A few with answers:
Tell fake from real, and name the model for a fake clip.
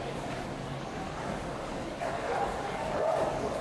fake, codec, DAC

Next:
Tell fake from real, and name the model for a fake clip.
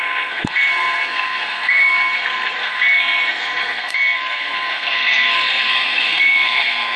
fake, codec, SNAC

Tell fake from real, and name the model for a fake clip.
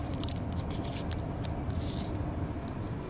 real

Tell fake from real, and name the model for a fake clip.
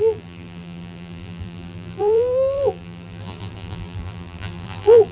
fake, vocoder, BigVGAN v2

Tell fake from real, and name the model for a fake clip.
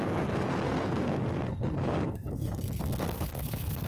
fake, codec, SNAC